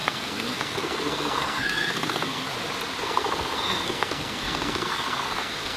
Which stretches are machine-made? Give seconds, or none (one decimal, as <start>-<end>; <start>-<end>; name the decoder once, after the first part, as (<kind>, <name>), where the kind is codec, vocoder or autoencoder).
0.0-2.5 (codec, SNAC); 3.0-5.8